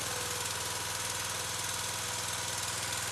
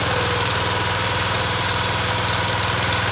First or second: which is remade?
second